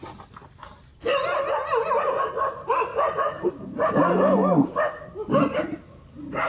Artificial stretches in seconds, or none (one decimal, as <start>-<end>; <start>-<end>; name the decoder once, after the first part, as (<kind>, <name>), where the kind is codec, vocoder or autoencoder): 0.9-1.4 (vocoder, BigVGAN v2); 2.9-3.9